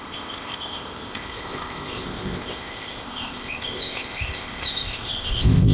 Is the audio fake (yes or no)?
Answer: yes